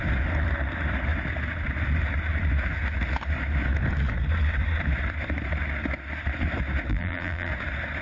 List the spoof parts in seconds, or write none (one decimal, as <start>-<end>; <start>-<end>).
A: 6.9-7.5